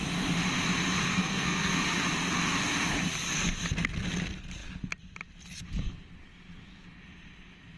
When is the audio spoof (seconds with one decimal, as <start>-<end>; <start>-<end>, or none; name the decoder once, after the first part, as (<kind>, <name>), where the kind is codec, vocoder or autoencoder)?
1.1-1.8 (codec, SNAC)